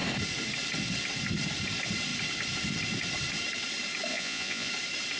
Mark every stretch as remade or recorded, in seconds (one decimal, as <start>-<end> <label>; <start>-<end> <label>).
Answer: 0.0-4.1 recorded; 4.1-4.7 remade; 4.7-5.2 recorded